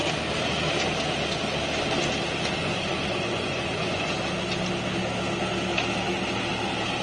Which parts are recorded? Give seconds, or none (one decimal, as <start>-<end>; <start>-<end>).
0.0-2.6; 4.1-7.0